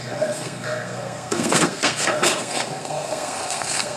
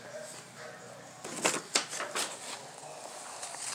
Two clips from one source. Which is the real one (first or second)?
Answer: second